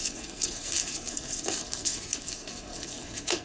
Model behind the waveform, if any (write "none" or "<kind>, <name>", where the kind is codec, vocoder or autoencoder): codec, SNAC